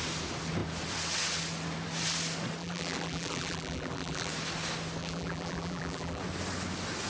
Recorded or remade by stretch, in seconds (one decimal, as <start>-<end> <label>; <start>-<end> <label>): 0.0-2.6 recorded; 2.6-4.3 remade; 4.3-5.0 recorded; 5.0-6.2 remade; 6.2-7.1 recorded